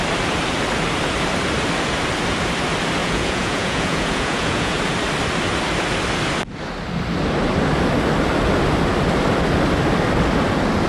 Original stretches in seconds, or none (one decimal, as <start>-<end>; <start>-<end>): 0.0-3.0; 4.8-10.9